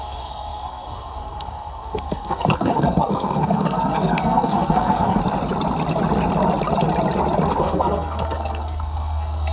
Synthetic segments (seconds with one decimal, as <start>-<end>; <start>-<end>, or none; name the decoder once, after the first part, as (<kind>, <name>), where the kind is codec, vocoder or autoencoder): 0.0-5.2 (codec, SNAC); 7.6-9.5